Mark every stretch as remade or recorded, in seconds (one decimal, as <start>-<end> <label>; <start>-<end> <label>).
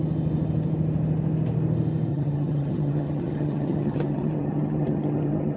0.0-2.1 recorded; 2.1-5.6 remade